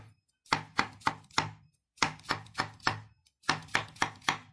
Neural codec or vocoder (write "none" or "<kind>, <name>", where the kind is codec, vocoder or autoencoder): none